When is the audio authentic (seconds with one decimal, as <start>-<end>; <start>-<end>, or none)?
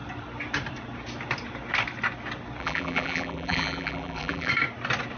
0.0-2.6; 4.5-5.2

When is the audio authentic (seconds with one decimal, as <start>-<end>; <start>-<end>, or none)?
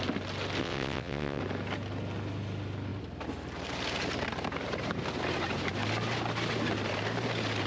0.0-0.6; 1.4-7.7